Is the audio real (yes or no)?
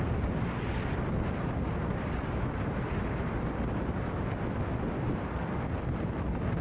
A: yes